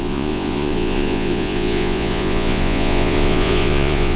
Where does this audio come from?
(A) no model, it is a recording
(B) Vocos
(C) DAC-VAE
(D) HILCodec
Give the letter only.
B